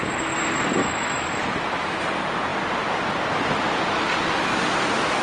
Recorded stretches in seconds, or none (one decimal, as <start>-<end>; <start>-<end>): 0.0-0.8; 2.0-5.2